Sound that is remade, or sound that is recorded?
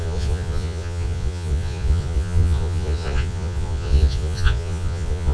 remade